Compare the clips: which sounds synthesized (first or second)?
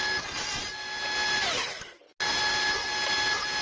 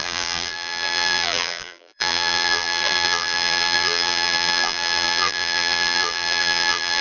second